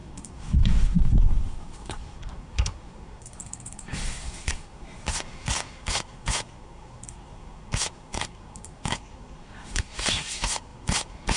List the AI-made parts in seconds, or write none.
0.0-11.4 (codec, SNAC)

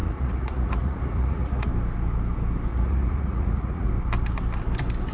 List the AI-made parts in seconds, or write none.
0.0-1.7 (vocoder, Vocos); 2.7-3.9

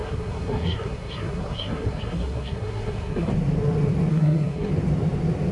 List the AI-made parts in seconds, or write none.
0.0-3.3 (codec, SNAC); 4.1-4.7